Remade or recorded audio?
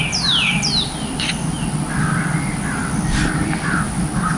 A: remade